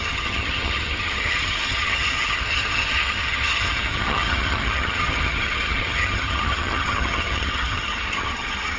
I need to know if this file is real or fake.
fake